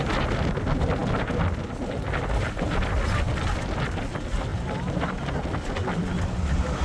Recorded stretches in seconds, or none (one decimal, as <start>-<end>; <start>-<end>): 0.0-6.8

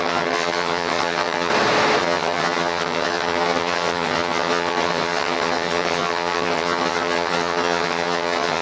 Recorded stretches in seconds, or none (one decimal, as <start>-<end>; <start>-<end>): 1.5-2.0

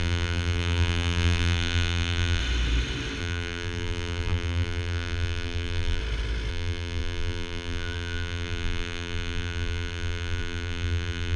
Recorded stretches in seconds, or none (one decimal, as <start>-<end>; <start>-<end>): 2.4-3.2; 6.0-6.5

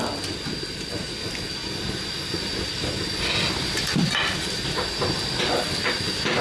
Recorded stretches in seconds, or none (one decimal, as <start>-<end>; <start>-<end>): 0.0-6.4

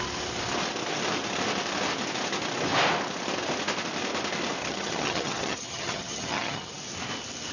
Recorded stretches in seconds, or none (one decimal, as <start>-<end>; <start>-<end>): 0.0-4.6; 6.8-7.5

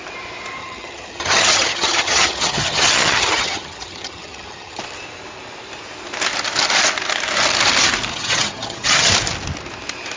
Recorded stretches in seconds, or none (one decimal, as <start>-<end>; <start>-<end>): 0.0-0.6; 4.8-8.1; 9.1-10.2